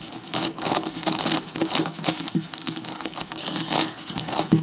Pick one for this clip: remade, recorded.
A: remade